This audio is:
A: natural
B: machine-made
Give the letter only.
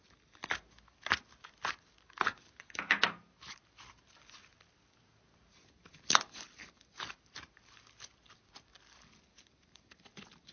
A